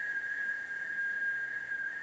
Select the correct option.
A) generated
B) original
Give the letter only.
A